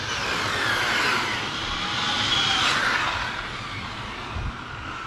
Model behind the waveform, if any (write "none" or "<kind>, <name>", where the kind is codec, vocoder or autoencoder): none